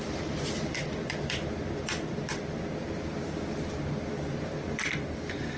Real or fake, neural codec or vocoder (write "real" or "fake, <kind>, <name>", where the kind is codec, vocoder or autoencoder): fake, vocoder, BigVGAN v2